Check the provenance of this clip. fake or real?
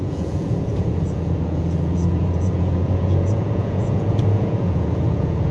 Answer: fake